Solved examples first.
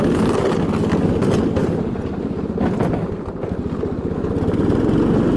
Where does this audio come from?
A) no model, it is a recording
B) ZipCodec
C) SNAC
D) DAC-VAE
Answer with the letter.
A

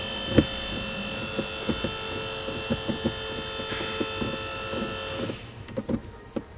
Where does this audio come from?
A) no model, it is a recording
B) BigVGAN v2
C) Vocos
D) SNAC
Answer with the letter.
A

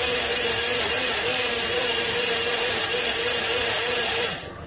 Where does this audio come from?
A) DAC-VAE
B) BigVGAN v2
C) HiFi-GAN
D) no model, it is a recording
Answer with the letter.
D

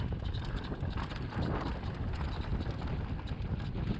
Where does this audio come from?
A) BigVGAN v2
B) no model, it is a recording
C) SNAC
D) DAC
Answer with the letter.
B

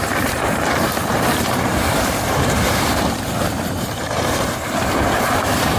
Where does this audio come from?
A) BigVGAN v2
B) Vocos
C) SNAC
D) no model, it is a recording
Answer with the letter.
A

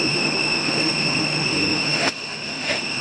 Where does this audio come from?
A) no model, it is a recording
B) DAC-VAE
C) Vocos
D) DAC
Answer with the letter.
B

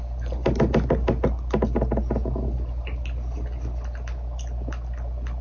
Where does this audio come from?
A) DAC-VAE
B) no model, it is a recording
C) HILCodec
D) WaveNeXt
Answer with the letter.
B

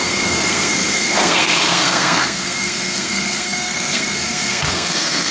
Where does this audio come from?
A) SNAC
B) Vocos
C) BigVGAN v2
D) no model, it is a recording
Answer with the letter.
A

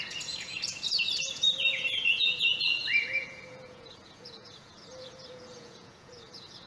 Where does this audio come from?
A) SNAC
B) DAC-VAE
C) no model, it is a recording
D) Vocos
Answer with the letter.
D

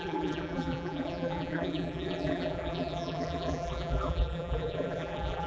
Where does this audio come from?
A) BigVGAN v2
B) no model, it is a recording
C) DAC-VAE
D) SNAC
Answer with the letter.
A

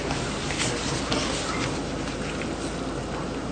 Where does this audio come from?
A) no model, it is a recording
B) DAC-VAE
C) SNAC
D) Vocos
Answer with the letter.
A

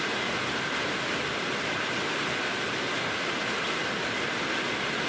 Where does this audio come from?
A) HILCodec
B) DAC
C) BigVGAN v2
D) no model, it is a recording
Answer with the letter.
D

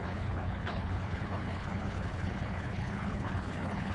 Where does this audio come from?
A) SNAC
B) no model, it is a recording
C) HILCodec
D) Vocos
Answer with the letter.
C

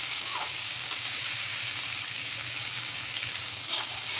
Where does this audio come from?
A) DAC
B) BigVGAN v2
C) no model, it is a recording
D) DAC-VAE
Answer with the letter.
A